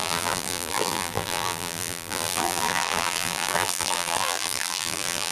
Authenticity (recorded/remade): remade